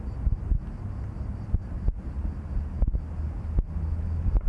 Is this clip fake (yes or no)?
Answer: no